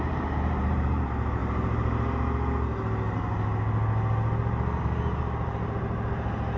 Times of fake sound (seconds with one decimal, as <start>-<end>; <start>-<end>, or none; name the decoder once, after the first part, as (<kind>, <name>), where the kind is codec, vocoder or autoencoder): 0.0-1.4 (vocoder, BigVGAN v2); 4.8-6.6